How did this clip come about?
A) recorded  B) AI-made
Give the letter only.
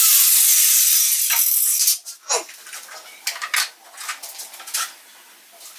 A